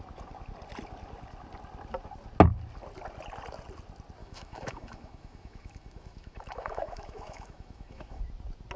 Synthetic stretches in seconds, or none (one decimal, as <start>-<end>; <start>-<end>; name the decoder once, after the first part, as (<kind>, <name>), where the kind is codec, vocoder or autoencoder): 4.2-8.2 (autoencoder, DAC-VAE)